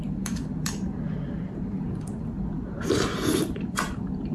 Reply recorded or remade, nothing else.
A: remade